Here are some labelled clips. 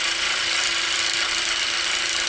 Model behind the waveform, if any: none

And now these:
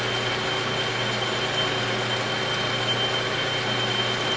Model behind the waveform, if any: none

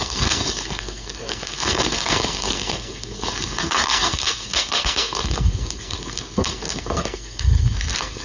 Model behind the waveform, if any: codec, SNAC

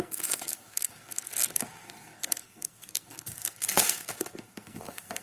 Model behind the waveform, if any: codec, SNAC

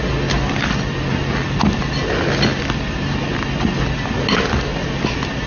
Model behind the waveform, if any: none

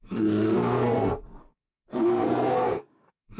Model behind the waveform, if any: codec, SNAC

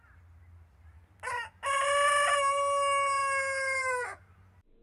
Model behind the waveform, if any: none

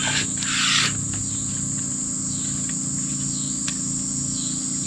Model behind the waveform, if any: none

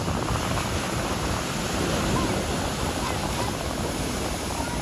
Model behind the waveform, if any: none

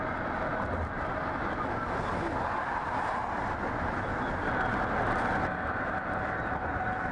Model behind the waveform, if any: none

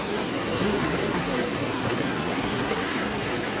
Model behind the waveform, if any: codec, SNAC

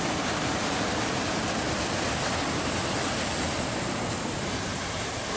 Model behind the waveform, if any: none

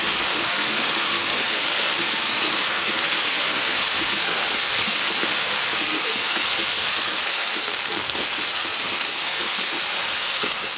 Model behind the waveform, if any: codec, SNAC